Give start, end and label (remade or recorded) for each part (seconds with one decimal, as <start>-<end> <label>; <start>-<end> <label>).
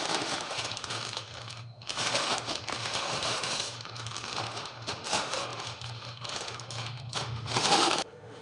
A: 0.0-8.4 remade